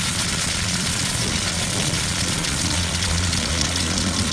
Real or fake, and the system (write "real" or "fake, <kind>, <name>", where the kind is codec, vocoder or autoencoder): fake, vocoder, Vocos